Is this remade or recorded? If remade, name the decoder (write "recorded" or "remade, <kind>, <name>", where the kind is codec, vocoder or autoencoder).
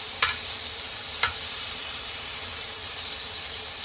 remade, vocoder, BigVGAN v2